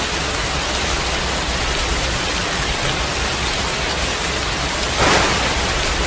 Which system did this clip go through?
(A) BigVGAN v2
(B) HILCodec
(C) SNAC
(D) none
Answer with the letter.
D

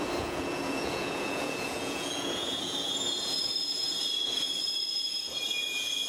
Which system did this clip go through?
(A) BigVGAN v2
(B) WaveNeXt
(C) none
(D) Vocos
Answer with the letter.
D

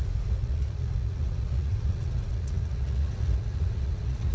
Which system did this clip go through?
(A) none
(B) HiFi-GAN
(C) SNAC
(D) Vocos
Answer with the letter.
D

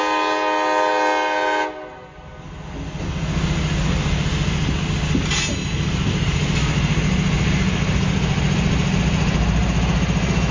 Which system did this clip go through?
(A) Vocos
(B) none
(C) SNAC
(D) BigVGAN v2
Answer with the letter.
B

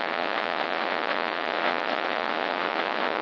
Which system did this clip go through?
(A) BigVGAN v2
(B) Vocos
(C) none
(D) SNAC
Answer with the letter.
B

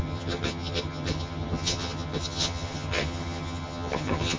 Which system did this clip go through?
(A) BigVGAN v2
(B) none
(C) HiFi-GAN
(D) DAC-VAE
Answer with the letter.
C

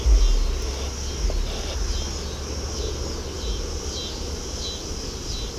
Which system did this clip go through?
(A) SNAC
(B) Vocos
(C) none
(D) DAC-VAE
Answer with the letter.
C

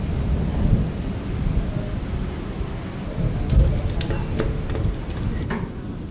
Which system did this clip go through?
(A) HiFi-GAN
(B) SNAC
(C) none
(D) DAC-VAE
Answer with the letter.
C